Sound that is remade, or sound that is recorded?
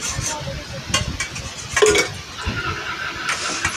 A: recorded